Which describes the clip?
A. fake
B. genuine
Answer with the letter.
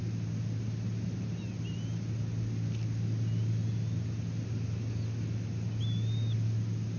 B